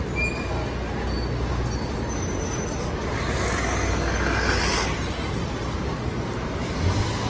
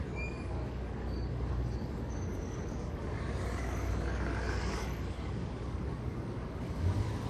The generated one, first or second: second